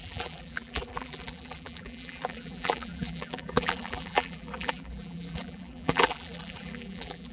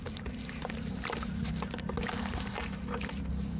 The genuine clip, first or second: second